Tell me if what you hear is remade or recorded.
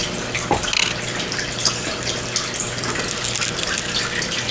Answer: recorded